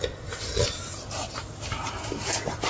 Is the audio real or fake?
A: real